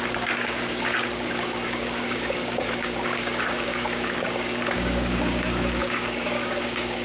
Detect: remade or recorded remade